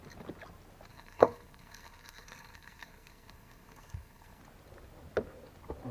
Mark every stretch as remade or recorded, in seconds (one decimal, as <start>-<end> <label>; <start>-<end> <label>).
0.0-0.9 recorded; 0.9-4.4 remade; 4.4-5.9 recorded

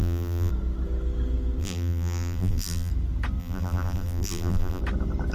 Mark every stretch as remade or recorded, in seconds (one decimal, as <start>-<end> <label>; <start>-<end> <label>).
0.0-0.5 remade; 0.5-1.6 recorded; 1.6-2.9 remade; 2.9-3.4 recorded; 3.4-4.8 remade; 4.8-5.3 recorded